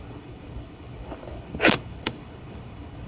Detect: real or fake fake